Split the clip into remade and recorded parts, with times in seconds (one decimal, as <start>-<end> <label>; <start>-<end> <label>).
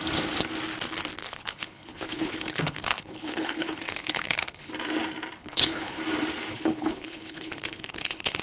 0.0-1.2 recorded; 1.2-4.7 remade; 4.7-5.4 recorded; 5.4-6.0 remade; 6.0-6.5 recorded; 6.5-8.4 remade